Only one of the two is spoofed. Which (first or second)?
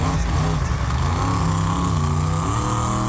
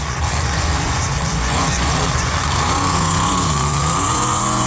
second